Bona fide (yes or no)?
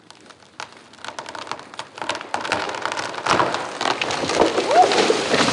yes